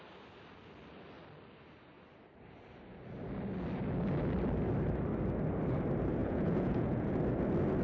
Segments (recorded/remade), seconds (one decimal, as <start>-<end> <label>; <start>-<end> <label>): 0.0-6.2 recorded; 6.2-7.1 remade; 7.1-7.8 recorded